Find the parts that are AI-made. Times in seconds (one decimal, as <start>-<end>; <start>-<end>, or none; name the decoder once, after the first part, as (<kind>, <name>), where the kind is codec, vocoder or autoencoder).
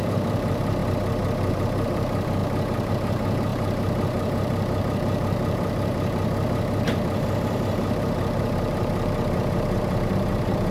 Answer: 0.0-0.8 (vocoder, BigVGAN v2); 1.5-10.7